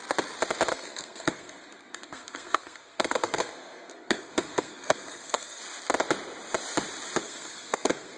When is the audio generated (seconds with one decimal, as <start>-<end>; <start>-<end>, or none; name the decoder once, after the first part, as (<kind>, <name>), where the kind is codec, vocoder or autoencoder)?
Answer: 0.7-5.6 (codec, SNAC); 7.2-8.2